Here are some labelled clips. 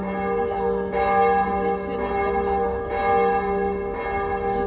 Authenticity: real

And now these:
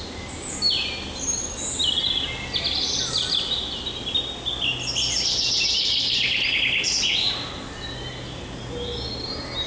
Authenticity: real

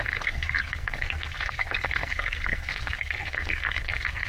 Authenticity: fake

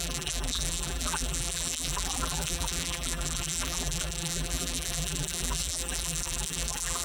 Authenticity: fake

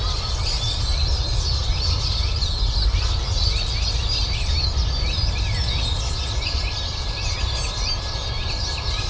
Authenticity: real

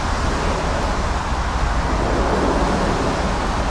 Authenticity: real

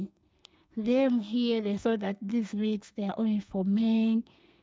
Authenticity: fake